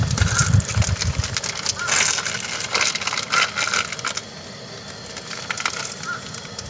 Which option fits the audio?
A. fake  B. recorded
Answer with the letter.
B